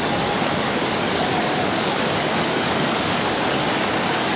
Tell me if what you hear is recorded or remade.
remade